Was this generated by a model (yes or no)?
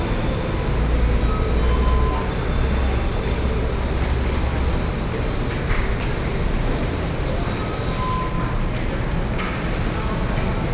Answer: no